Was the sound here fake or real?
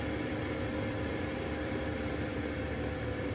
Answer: fake